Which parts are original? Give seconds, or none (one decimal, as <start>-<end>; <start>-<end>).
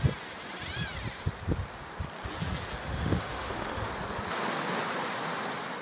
0.0-2.8; 3.9-5.8